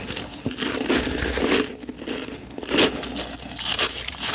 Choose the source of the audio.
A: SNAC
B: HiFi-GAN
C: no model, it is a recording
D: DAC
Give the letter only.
C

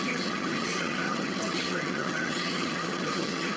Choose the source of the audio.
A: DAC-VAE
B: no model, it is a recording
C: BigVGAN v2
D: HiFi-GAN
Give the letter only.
D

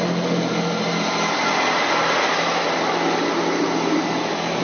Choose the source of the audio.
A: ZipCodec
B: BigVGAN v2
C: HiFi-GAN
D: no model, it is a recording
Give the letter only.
D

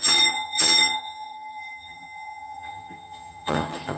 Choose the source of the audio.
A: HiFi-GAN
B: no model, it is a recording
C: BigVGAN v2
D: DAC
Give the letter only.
A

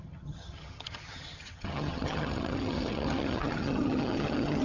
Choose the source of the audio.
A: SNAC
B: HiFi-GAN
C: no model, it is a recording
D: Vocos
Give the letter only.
B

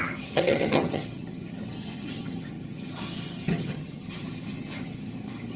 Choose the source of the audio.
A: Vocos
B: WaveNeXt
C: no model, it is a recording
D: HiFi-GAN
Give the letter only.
D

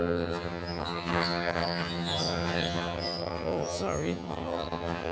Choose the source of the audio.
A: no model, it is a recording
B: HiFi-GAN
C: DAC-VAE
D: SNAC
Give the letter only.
B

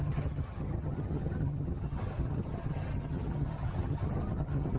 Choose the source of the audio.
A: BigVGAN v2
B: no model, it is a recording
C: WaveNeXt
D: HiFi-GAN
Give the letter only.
D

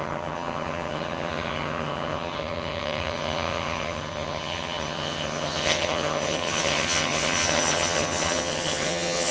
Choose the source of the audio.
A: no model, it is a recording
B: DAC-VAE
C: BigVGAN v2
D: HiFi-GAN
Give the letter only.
D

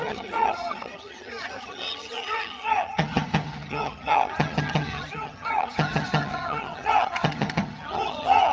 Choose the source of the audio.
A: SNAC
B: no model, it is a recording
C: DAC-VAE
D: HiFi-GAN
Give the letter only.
D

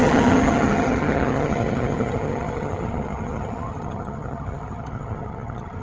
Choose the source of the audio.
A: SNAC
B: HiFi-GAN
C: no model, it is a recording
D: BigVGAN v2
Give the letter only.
B